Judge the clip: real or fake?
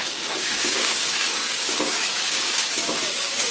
fake